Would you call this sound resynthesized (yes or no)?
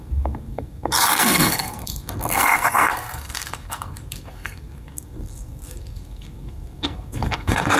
yes